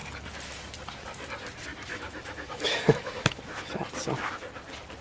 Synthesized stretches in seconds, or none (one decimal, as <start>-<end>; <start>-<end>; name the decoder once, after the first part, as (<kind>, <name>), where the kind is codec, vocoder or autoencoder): 1.7-3.7 (autoencoder, DAC-VAE)